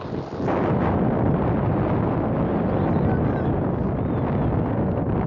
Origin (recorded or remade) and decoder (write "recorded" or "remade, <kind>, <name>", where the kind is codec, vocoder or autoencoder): recorded